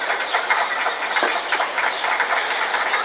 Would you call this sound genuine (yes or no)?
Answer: yes